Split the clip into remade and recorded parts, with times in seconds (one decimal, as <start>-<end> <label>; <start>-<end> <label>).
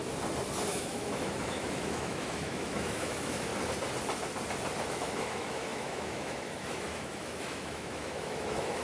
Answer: 0.0-0.7 recorded; 0.7-3.5 remade; 3.5-4.9 recorded; 4.9-8.8 remade